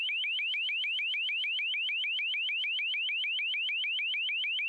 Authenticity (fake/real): real